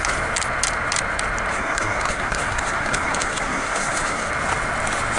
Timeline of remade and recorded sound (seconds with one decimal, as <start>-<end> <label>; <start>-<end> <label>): 0.0-1.5 recorded; 1.5-4.3 remade; 4.3-5.2 recorded

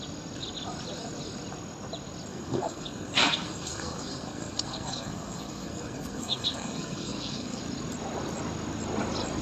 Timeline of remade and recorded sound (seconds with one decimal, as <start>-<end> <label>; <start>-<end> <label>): 0.0-2.3 recorded; 2.3-7.6 remade; 7.6-9.4 recorded

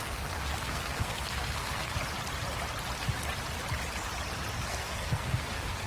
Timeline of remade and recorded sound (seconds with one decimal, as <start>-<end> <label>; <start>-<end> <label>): 0.0-1.9 remade; 1.9-4.7 recorded; 4.7-5.9 remade

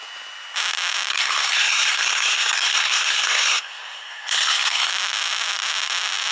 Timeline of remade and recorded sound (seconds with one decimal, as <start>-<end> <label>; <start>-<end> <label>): 0.0-1.1 recorded; 1.1-4.9 remade; 4.9-6.3 recorded

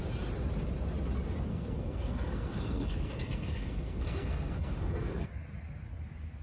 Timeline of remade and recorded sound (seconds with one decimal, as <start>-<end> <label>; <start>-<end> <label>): 0.0-1.5 recorded; 1.5-5.3 remade; 5.3-6.4 recorded

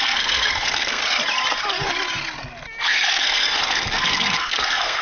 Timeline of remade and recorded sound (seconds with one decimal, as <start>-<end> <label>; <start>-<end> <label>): 0.0-1.0 remade; 1.0-2.8 recorded; 2.8-5.0 remade